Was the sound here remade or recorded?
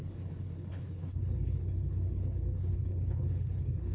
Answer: remade